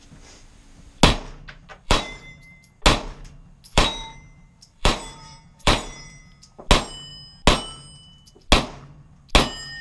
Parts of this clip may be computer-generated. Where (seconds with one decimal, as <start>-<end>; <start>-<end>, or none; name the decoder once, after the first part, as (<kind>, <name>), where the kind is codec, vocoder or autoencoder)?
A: 1.7-2.7 (vocoder, BigVGAN v2); 3.7-6.2